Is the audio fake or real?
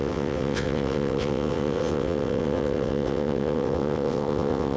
fake